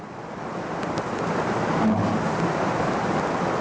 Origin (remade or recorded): recorded